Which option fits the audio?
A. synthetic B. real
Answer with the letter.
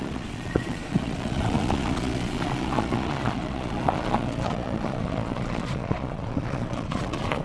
A